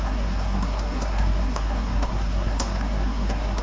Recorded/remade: remade